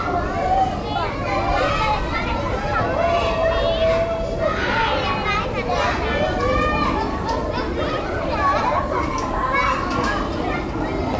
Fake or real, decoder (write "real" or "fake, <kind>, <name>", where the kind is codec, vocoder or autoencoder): real